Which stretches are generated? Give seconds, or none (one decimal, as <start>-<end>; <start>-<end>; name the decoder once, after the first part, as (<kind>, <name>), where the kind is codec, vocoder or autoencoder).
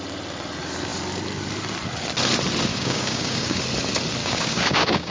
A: 2.7-3.6 (codec, DAC); 4.2-5.1